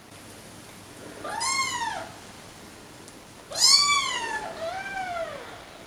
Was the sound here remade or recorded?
recorded